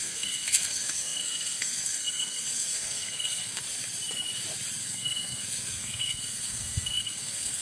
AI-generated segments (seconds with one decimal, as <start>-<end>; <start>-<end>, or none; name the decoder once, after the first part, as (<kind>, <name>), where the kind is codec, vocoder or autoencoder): 0.0-3.6 (codec, SNAC); 4.8-7.6